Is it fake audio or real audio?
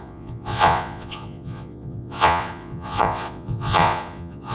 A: fake